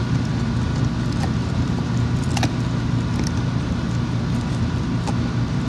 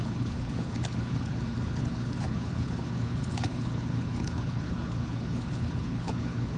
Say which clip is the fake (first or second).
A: second